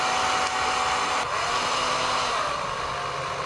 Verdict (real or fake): real